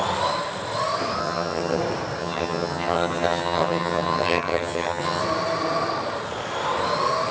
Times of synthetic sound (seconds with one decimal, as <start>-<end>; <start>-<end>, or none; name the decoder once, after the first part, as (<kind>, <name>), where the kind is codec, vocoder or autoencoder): 1.2-1.8 (vocoder, HiFi-GAN); 2.2-5.2